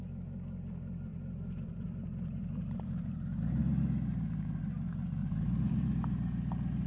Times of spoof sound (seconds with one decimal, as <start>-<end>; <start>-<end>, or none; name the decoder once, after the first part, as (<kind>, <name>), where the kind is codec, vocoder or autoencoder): 1.1-3.1 (vocoder, BigVGAN v2); 5.2-6.0